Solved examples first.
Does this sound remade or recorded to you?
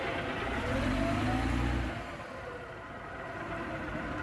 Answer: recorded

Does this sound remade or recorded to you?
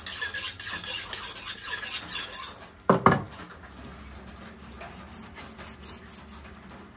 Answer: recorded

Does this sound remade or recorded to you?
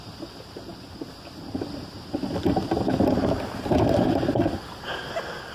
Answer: recorded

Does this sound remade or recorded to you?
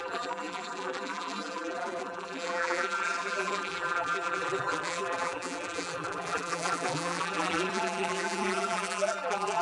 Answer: remade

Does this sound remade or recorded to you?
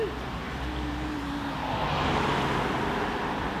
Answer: recorded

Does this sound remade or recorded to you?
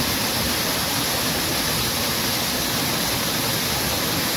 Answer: recorded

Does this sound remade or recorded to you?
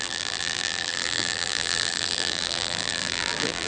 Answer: remade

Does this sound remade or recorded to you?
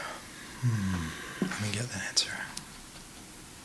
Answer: recorded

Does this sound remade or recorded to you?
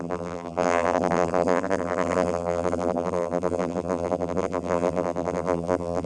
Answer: remade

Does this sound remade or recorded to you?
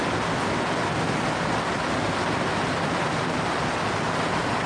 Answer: recorded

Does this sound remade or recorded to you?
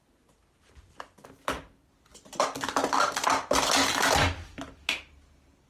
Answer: recorded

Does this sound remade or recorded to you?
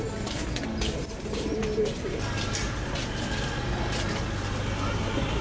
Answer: recorded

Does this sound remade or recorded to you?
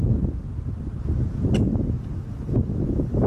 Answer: recorded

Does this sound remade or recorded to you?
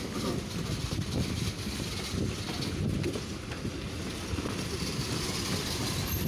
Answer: remade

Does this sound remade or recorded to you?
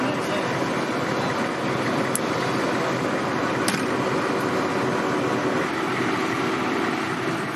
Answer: recorded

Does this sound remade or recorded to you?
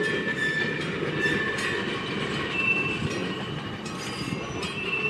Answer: remade